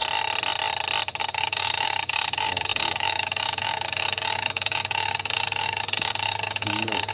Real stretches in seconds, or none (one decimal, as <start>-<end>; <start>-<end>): 0.0-1.2